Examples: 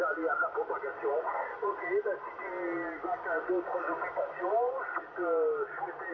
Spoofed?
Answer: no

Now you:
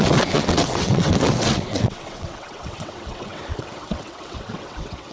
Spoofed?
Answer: yes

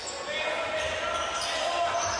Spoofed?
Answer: no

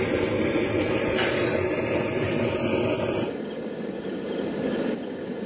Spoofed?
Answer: no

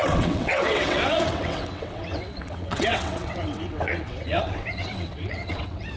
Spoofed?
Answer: yes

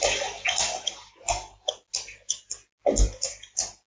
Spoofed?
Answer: no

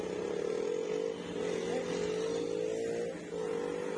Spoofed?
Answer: no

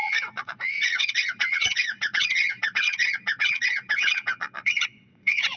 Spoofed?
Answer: yes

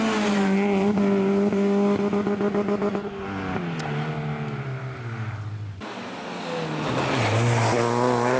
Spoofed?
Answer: no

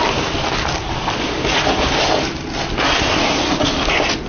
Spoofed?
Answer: no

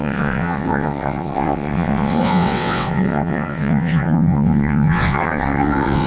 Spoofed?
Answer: yes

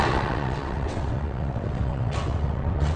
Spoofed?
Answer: yes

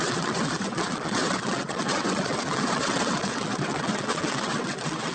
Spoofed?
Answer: yes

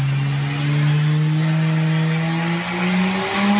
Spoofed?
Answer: no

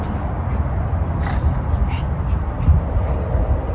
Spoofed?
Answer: no